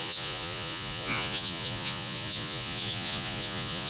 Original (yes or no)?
no